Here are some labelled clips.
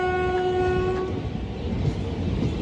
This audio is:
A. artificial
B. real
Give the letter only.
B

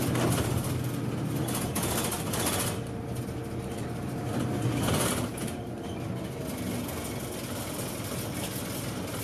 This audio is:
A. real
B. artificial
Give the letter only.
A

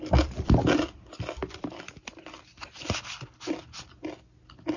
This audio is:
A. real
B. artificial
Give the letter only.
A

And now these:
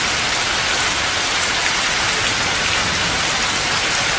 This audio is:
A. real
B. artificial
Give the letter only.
A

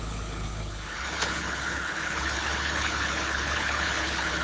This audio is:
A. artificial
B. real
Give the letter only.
A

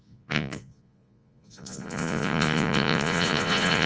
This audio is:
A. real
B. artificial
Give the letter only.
B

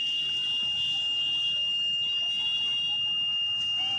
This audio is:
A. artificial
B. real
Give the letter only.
B